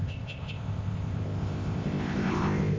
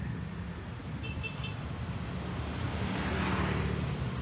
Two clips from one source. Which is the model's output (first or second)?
first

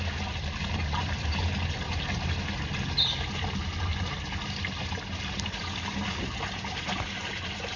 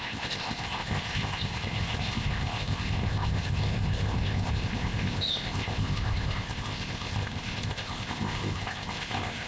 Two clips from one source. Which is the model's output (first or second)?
second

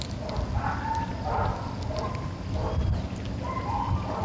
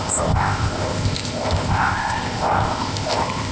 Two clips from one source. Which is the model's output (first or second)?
second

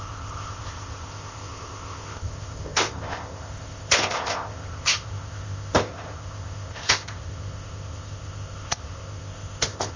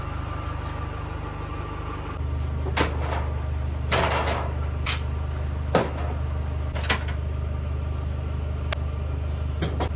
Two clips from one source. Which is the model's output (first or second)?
first